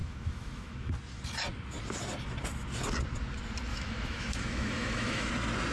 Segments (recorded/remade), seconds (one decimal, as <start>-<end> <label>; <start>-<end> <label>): 0.0-0.9 remade; 0.9-3.7 recorded; 3.7-5.3 remade; 5.3-5.7 recorded